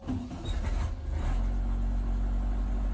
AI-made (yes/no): no